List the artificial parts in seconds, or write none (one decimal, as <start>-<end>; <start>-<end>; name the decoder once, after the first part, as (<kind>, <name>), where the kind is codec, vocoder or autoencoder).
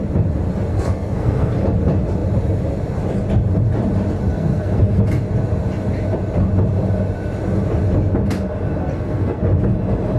0.7-1.5 (codec, SNAC); 4.3-5.0; 8.8-9.4